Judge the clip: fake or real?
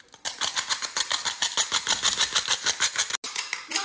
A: real